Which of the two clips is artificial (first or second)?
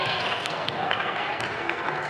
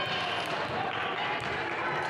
first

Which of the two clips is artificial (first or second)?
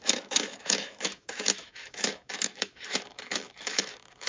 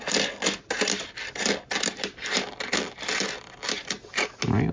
first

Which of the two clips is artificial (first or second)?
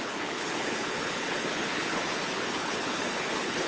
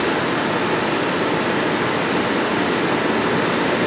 first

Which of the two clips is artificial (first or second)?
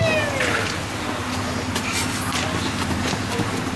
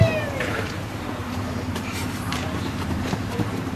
second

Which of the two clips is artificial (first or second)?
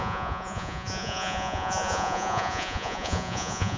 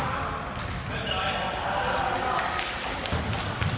first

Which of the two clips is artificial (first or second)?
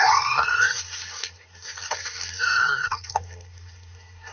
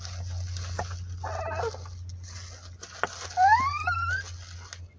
first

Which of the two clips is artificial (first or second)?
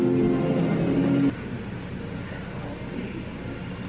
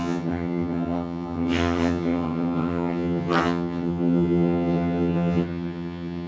second